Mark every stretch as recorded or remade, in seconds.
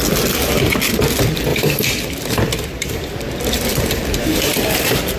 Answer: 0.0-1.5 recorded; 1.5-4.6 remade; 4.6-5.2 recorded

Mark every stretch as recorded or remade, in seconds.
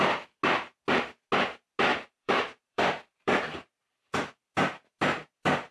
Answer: 0.0-1.9 recorded; 1.9-4.5 remade; 4.5-5.7 recorded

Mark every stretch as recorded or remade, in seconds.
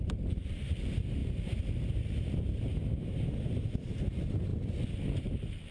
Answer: 0.0-4.5 remade; 4.5-5.2 recorded; 5.2-5.7 remade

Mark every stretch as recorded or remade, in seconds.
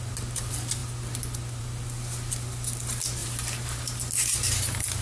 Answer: 0.0-3.2 recorded; 3.2-5.0 remade